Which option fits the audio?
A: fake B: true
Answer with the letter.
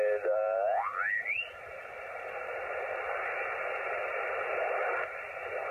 B